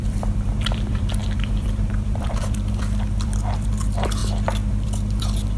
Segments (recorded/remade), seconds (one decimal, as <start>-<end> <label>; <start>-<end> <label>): 0.0-5.6 remade

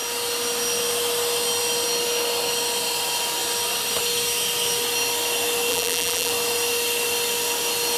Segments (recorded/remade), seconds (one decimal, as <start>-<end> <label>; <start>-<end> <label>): 0.0-5.7 recorded; 5.7-6.3 remade; 6.3-8.0 recorded

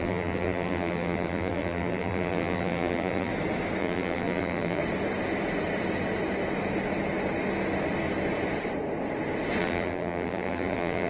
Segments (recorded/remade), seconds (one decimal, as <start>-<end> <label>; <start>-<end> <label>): 0.0-3.3 remade; 3.3-3.8 recorded; 3.8-4.8 remade; 4.8-9.6 recorded; 9.6-11.1 remade